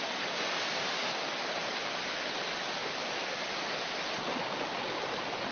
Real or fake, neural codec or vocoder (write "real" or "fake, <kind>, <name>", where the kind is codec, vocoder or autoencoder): real